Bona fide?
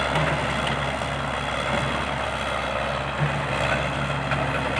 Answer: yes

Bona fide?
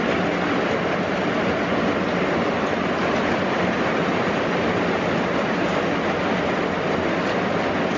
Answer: yes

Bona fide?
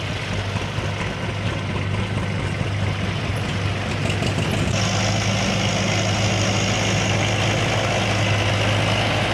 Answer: yes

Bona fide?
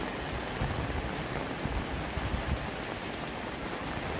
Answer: yes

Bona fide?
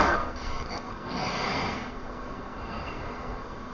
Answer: no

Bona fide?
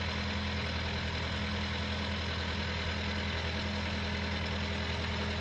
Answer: yes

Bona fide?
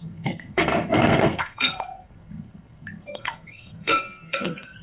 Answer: no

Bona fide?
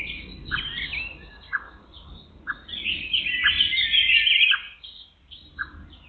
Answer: yes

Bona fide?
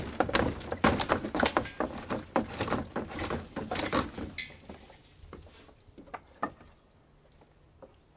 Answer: yes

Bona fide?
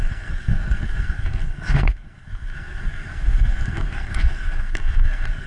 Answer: no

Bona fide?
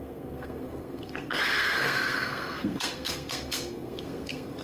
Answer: no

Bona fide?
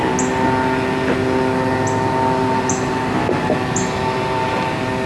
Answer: yes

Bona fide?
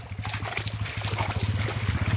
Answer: yes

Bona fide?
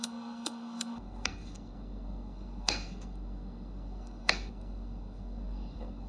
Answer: no